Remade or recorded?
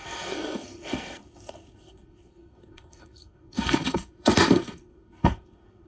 remade